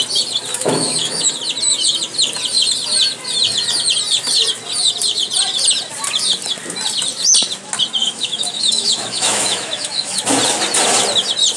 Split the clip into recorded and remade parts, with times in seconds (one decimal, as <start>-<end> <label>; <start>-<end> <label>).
0.0-0.5 recorded; 0.5-1.3 remade; 1.3-8.0 recorded; 8.0-10.2 remade; 10.2-11.6 recorded